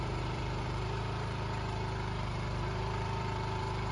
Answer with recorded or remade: remade